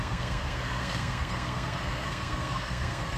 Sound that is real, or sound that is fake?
fake